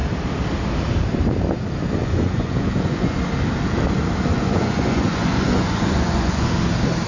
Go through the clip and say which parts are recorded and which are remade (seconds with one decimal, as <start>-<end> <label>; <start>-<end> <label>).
0.0-2.0 recorded; 2.0-3.2 remade; 3.2-4.3 recorded; 4.3-6.5 remade; 6.5-7.1 recorded